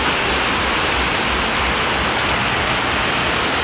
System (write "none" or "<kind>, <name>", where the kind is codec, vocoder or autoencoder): none